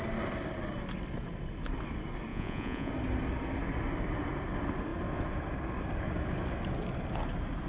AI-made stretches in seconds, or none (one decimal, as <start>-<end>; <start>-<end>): 2.3-2.9